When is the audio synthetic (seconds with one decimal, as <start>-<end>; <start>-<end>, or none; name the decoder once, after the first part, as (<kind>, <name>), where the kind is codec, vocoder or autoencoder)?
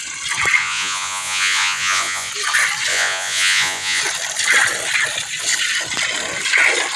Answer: 0.6-2.3 (vocoder, Vocos); 2.9-4.0